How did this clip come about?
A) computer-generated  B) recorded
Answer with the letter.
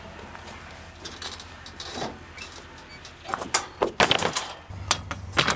B